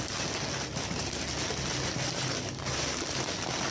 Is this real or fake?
real